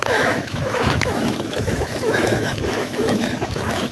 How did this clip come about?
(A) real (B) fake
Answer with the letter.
B